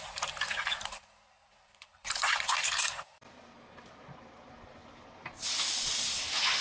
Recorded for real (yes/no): yes